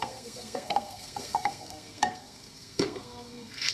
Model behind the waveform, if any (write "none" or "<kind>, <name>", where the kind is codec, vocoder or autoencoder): codec, SNAC